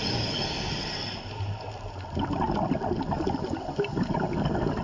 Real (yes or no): yes